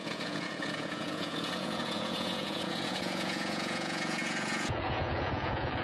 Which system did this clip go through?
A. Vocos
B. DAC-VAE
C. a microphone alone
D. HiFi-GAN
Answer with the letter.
A